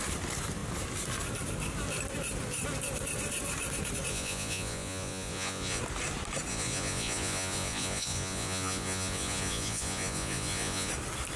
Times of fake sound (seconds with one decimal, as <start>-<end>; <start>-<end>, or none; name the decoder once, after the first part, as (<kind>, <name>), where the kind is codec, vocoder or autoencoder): 4.1-5.8 (vocoder, Vocos); 6.5-10.9